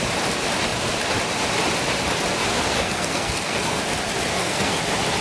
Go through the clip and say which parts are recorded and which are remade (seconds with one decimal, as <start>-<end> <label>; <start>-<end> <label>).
0.0-2.5 recorded; 2.5-3.8 remade; 3.8-4.3 recorded; 4.3-4.8 remade; 4.8-5.2 recorded